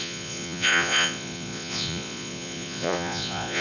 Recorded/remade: remade